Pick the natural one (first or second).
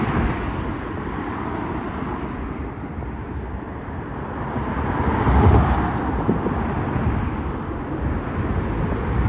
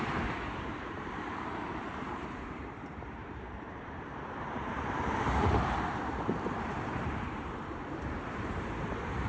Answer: first